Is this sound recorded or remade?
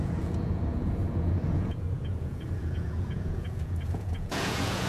remade